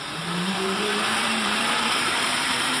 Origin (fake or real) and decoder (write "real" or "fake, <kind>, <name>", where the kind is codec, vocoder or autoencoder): fake, vocoder, BigVGAN v2